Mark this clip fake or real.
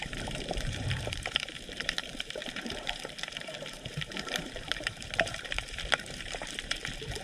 fake